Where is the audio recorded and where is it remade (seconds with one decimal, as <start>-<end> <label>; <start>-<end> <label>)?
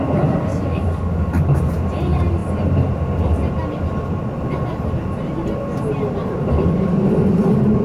0.0-0.5 recorded; 0.5-1.7 remade; 1.7-7.8 recorded